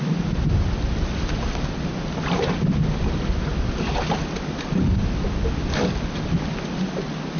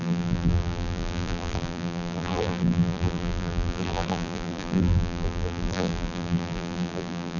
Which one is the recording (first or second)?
first